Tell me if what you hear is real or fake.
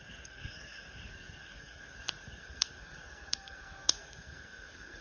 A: fake